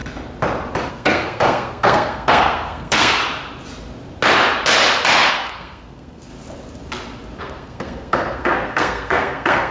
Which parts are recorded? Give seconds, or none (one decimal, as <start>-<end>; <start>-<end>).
0.0-0.9; 3.2-5.3; 6.3-7.4